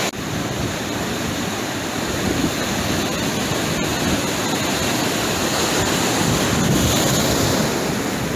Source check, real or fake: real